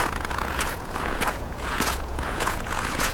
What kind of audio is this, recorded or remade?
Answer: remade